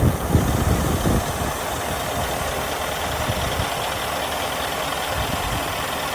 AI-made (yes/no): no